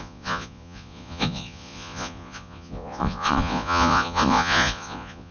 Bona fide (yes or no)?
no